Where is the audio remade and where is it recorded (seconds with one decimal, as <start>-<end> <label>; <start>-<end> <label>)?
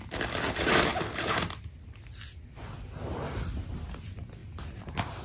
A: 0.0-5.2 recorded